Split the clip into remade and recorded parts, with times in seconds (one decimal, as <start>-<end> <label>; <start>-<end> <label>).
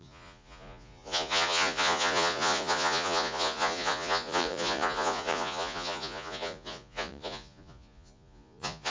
0.0-8.9 remade